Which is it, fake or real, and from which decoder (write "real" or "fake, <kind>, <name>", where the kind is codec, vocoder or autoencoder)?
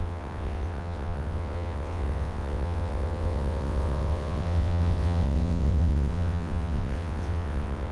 fake, vocoder, WaveNeXt